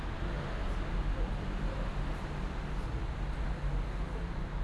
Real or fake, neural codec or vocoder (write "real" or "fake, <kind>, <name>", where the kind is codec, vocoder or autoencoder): real